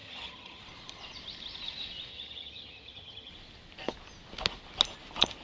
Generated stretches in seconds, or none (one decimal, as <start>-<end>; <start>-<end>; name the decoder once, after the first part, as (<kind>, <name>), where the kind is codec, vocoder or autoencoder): 0.0-0.6 (vocoder, HiFi-GAN); 2.1-3.3